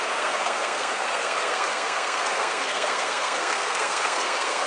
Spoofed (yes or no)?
yes